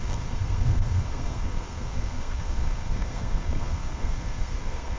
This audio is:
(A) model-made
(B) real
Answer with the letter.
A